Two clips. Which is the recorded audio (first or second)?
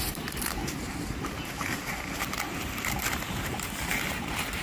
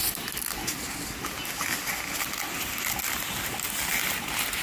second